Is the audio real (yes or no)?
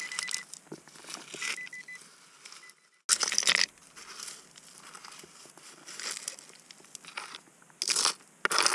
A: yes